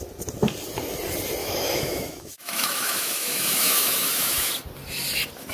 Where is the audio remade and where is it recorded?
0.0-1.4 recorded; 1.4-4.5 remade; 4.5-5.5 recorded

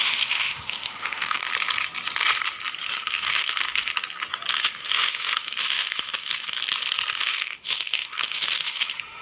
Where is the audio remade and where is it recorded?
0.0-1.4 remade; 1.4-3.0 recorded; 3.0-3.9 remade; 3.9-4.5 recorded; 4.5-6.6 remade; 6.6-7.2 recorded; 7.2-9.2 remade

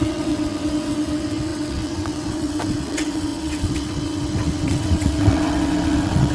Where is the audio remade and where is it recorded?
0.0-6.3 remade

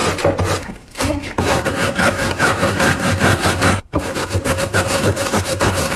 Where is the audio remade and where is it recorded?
0.0-0.6 recorded; 0.6-6.0 remade

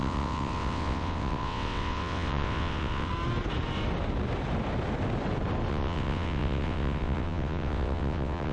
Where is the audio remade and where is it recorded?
0.0-3.1 remade; 3.1-5.7 recorded; 5.7-8.5 remade

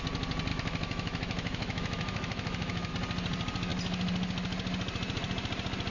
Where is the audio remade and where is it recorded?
0.0-0.5 recorded; 0.5-2.9 remade; 2.9-5.9 recorded

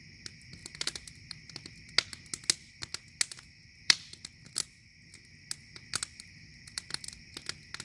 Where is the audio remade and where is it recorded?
0.0-0.6 recorded; 0.6-1.9 remade; 1.9-3.6 recorded; 3.6-4.5 remade; 4.5-6.5 recorded; 6.5-7.2 remade; 7.2-7.8 recorded